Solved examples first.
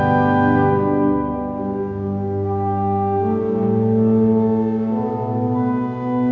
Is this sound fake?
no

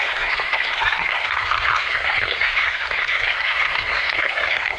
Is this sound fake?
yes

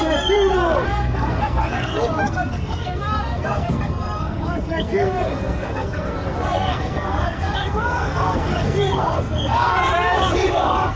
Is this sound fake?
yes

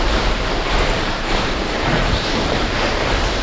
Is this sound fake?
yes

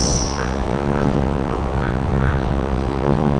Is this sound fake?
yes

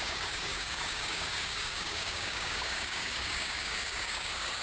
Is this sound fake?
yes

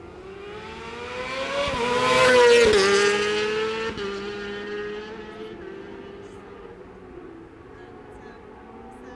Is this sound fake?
no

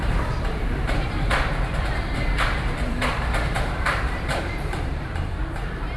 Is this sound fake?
yes